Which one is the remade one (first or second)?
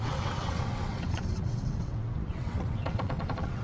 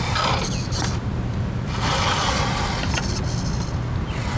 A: first